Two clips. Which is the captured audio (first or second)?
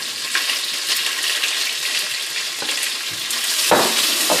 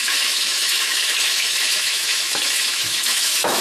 first